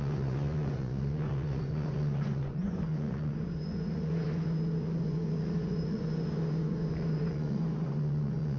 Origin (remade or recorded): remade